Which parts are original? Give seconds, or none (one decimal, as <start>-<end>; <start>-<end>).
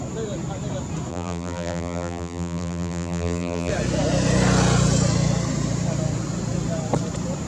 0.0-1.1; 3.7-7.5